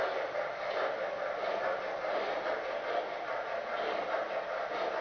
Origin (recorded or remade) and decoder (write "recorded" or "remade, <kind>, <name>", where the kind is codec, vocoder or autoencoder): recorded